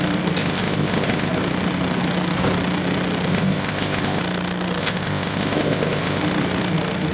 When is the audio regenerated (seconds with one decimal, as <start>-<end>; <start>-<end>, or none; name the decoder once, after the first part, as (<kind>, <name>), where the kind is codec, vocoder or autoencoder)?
0.4-1.3 (codec, ZipCodec); 3.3-4.2; 4.8-6.2